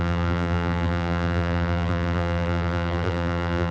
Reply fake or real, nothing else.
fake